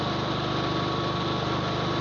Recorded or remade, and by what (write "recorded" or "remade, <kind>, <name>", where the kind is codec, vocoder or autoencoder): recorded